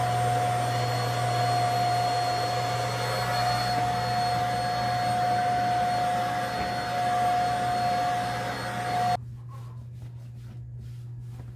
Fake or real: real